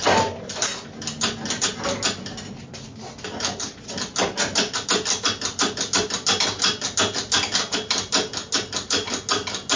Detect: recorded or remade recorded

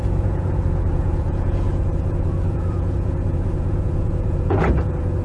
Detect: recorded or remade remade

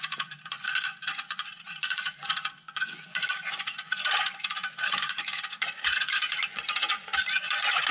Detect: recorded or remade remade